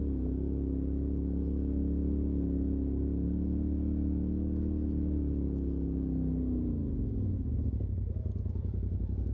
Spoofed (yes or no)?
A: no